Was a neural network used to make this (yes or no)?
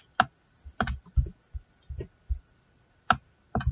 no